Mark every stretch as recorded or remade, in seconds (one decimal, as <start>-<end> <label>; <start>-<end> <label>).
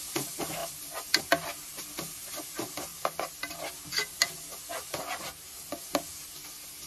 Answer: 0.0-6.9 recorded